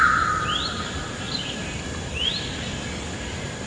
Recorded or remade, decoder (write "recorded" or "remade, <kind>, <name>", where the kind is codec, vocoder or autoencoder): recorded